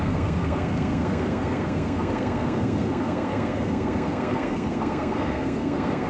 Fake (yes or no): yes